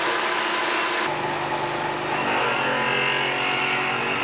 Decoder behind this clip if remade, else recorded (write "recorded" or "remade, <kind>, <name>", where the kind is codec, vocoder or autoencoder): recorded